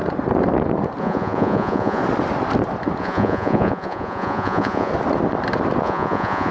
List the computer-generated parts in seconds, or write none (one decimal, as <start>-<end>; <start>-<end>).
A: 1.0-2.0; 3.0-4.9; 5.8-6.5